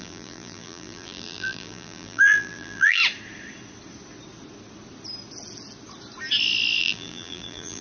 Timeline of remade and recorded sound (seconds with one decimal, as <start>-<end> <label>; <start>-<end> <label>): 0.0-3.0 remade; 3.0-6.8 recorded; 6.8-7.8 remade